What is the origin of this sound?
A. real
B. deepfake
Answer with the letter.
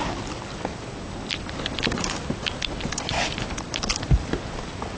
A